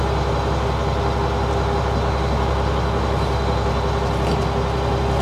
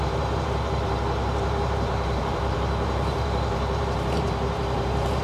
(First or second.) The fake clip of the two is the second